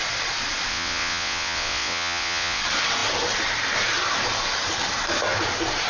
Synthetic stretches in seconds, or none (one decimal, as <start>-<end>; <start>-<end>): 0.7-2.6